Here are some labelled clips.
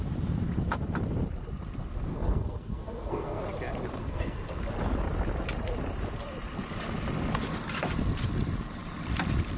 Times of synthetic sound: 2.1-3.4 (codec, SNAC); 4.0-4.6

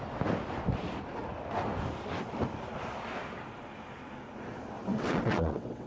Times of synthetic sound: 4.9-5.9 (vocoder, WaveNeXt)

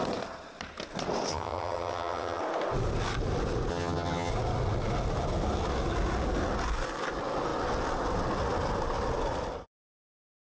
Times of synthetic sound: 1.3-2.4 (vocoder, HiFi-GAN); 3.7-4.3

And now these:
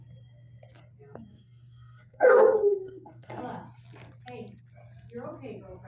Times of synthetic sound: 1.3-3.4 (codec, SNAC)

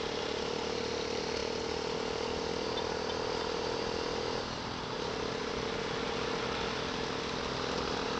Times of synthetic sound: none